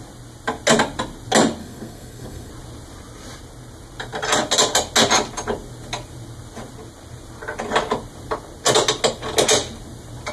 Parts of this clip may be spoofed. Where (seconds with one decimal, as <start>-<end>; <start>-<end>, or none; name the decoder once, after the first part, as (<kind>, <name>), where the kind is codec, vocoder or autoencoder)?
1.6-2.5 (codec, SNAC)